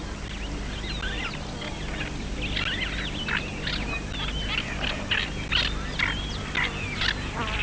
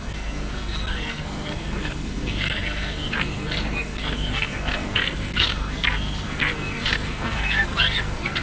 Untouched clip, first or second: first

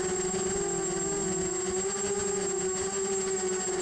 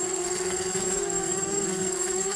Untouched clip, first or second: first